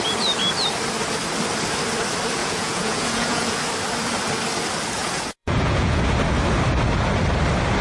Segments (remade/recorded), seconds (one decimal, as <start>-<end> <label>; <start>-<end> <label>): 0.0-2.4 recorded; 2.4-3.6 remade; 3.6-5.0 recorded; 5.0-6.0 remade; 6.0-7.8 recorded